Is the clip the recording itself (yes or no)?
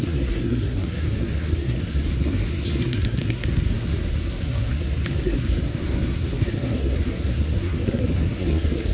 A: no